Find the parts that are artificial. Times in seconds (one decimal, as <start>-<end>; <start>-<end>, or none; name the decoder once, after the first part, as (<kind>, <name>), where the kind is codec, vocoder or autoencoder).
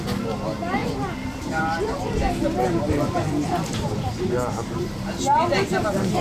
0.8-1.6 (vocoder, BigVGAN v2); 2.4-6.2